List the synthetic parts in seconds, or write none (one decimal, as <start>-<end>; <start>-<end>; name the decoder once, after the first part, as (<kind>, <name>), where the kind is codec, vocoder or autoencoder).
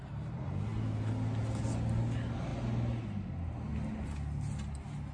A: none